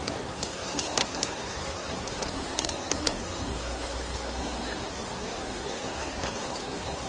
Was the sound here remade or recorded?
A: remade